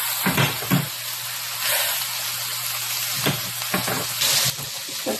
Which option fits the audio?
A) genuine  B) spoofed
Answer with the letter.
A